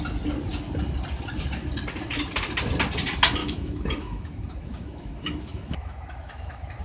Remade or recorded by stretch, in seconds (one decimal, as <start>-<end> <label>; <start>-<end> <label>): 0.0-3.4 recorded; 3.4-6.8 remade